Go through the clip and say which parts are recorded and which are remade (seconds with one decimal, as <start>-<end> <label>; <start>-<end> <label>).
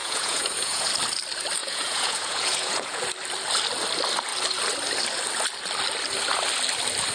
0.0-0.9 remade; 0.9-1.6 recorded; 1.6-3.0 remade; 3.0-7.1 recorded